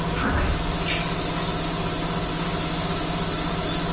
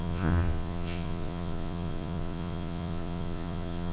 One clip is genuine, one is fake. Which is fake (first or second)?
second